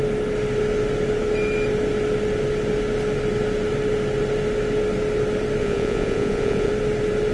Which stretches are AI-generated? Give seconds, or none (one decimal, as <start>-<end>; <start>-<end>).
5.6-6.7